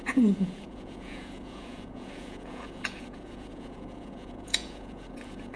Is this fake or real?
fake